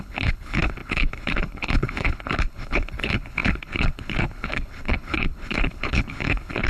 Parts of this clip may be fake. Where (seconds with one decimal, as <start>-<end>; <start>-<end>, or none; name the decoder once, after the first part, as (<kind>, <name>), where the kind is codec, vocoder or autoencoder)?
0.0-6.7 (codec, HILCodec)